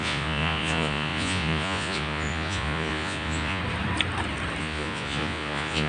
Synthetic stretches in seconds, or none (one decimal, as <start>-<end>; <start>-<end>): 0.0-3.6; 4.6-5.9

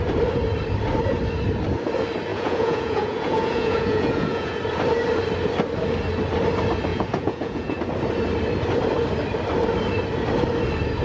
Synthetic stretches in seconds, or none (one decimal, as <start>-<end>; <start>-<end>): 2.3-4.6; 6.9-7.8

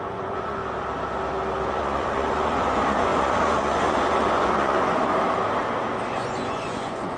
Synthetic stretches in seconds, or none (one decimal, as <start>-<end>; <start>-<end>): 0.0-0.6; 1.7-5.1; 6.1-7.2

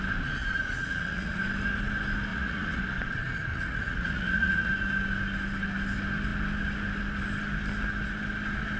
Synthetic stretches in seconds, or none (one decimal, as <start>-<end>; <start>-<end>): 0.4-1.4; 2.3-2.8; 3.5-4.7

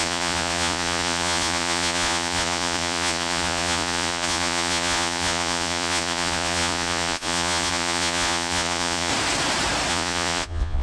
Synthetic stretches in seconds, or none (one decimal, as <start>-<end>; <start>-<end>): 0.0-9.1; 9.9-10.8